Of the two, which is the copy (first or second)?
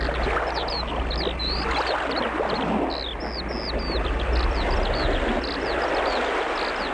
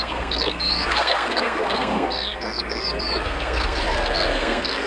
second